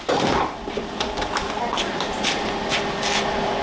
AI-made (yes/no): no